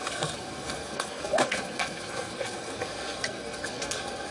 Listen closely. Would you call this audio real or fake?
fake